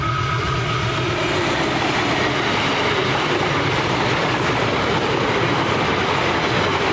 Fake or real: real